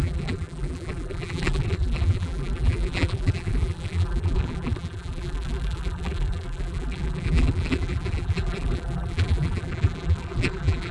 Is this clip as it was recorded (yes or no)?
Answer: no